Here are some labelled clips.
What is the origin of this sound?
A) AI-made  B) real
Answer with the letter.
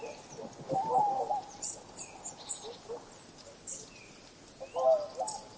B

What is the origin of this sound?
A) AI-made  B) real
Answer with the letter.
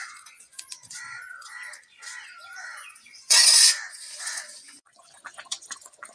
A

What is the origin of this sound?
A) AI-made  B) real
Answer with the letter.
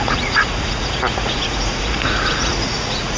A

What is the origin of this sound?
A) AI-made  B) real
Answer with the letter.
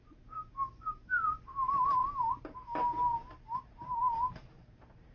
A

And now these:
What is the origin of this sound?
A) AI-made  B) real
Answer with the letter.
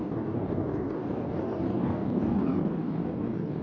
A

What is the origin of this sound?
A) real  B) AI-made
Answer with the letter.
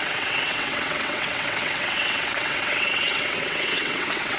B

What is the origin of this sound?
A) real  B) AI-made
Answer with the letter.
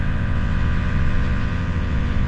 B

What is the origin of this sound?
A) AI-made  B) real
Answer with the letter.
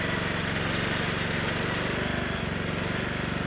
B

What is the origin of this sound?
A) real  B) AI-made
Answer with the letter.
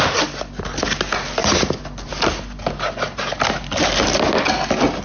A